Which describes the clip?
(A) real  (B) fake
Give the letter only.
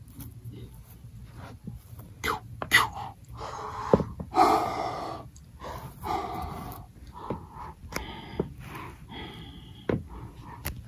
A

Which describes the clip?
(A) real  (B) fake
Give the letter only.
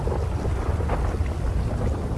A